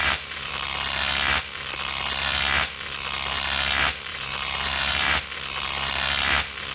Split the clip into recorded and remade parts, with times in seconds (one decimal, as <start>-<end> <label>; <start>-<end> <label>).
0.0-0.5 remade; 0.5-4.1 recorded; 4.1-5.2 remade; 5.2-6.7 recorded